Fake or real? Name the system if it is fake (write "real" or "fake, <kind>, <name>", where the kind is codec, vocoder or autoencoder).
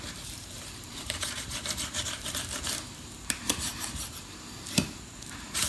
fake, vocoder, BigVGAN v2